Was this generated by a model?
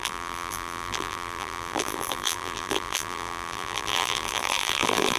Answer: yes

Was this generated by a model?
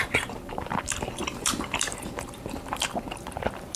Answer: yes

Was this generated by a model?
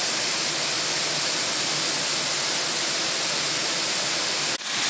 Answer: no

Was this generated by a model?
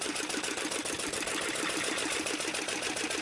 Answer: yes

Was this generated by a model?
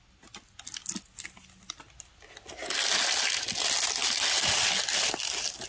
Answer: no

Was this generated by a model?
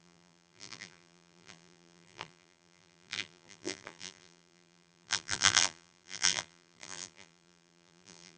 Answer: yes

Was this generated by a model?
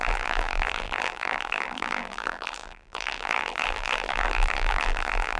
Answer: yes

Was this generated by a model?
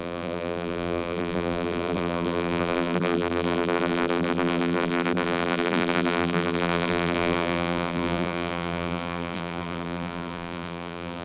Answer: yes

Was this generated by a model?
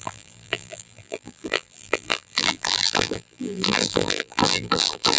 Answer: yes